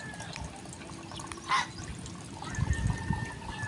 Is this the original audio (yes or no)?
yes